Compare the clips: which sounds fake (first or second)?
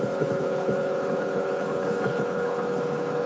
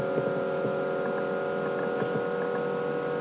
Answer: first